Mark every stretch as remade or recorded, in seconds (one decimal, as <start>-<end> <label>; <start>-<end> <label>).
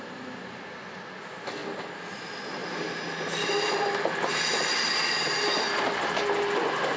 0.0-7.0 recorded